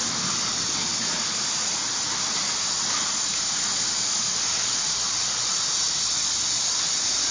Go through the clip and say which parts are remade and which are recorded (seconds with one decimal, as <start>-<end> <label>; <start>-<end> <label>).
0.0-7.3 recorded